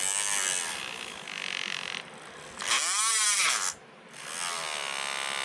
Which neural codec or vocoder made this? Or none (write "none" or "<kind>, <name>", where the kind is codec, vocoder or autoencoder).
none